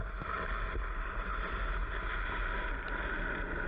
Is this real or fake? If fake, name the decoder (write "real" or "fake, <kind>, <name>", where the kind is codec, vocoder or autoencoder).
real